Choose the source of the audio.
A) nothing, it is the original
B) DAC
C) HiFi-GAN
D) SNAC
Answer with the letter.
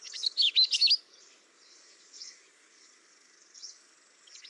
B